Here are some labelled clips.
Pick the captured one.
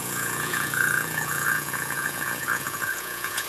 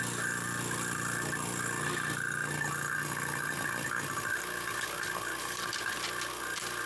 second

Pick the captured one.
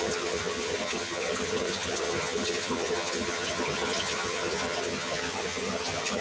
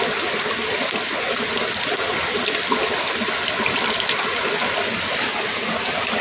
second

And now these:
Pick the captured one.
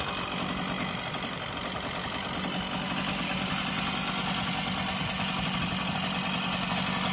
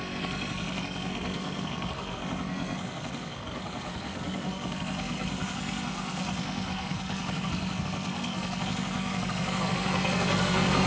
first